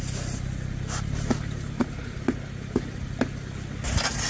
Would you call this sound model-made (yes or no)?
no